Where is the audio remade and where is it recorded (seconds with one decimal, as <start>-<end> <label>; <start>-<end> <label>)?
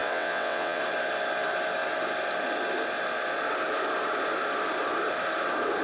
0.0-0.8 remade; 0.8-5.8 recorded